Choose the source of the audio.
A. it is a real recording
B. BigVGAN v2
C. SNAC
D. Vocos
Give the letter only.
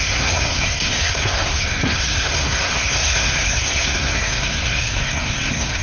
C